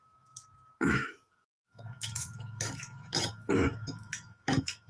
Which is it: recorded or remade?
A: remade